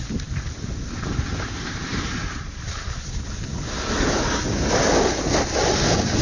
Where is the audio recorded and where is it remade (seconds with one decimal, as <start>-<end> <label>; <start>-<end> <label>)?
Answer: 0.0-6.2 recorded